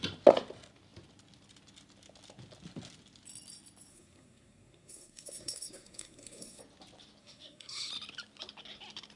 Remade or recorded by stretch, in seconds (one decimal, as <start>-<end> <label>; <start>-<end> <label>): 0.0-3.9 recorded; 3.9-6.6 remade; 6.6-7.2 recorded; 7.2-7.9 remade; 7.9-9.2 recorded